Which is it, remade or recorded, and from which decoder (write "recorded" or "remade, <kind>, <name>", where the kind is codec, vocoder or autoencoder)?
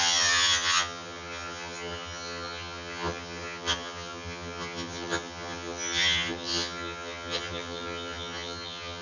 remade, vocoder, HiFi-GAN